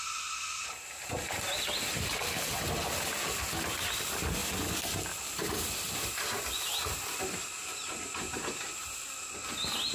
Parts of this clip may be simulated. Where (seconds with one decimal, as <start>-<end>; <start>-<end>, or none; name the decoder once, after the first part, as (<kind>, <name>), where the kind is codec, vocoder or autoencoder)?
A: none